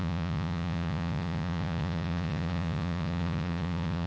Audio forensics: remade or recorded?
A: remade